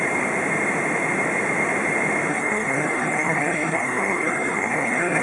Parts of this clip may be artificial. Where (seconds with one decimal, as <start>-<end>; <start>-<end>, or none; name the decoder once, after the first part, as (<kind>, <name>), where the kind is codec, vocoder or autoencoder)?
2.3-5.2 (codec, SNAC)